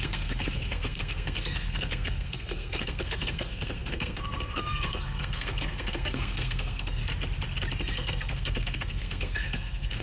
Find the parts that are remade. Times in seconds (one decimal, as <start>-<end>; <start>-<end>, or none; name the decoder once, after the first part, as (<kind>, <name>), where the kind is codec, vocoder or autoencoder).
0.0-7.0 (codec, SNAC); 7.9-10.0